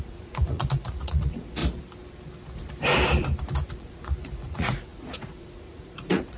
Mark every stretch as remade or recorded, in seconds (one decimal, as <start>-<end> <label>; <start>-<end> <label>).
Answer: 0.0-1.6 remade; 1.6-3.7 recorded; 3.7-6.4 remade